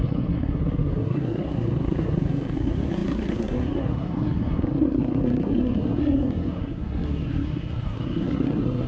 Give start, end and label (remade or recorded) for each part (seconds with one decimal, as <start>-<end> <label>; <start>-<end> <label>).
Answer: 0.0-8.9 remade